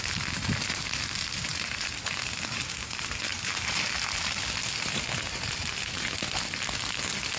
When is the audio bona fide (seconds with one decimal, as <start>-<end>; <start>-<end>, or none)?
0.0-1.5; 2.1-3.3; 3.8-7.4